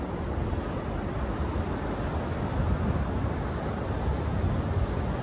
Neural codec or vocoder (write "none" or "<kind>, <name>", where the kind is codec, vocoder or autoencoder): none